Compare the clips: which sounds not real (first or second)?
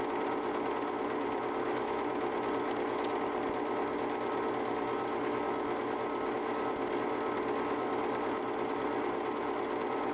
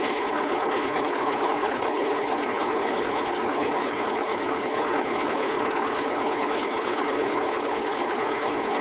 second